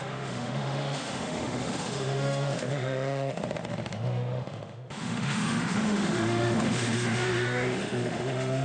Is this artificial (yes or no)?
yes